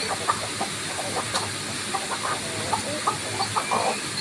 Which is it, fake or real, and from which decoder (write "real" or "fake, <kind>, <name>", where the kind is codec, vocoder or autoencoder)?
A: real